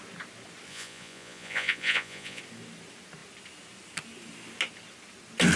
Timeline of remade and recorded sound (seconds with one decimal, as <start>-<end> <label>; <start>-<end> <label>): 0.0-0.7 recorded; 0.7-2.4 remade; 2.4-5.6 recorded